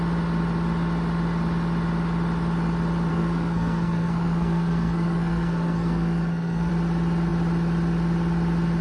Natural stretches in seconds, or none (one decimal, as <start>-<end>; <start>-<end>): 0.0-3.1; 6.7-8.8